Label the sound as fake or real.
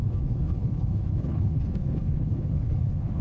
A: fake